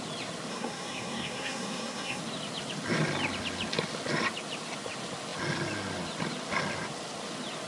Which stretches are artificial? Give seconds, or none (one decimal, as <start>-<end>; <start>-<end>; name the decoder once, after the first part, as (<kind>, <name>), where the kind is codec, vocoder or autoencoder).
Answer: 0.5-2.2 (codec, SNAC)